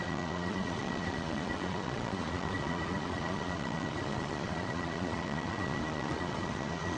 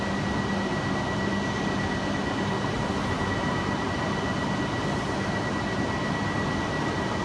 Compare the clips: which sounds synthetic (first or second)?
first